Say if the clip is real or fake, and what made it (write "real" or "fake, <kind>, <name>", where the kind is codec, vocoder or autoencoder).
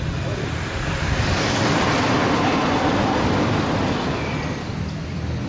fake, vocoder, BigVGAN v2